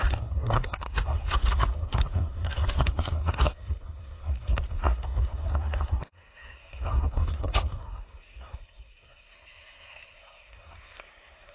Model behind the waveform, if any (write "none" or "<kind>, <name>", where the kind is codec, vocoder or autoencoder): codec, SNAC